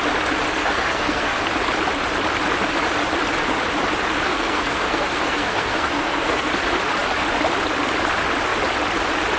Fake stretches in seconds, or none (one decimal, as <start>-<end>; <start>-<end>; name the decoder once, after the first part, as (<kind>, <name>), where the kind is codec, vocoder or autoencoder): 0.6-1.4 (codec, SNAC); 4.3-6.5